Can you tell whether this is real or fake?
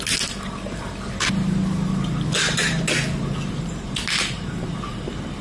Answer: real